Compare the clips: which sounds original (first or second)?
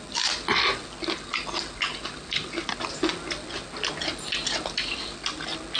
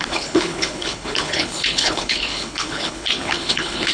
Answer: first